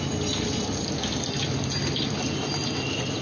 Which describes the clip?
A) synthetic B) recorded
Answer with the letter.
B